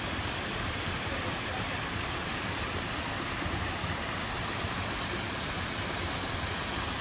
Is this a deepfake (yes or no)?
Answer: no